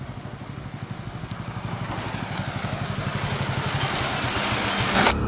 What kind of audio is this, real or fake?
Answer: real